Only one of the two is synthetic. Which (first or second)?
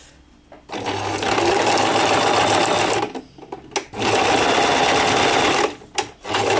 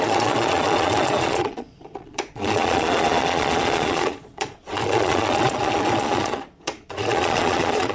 second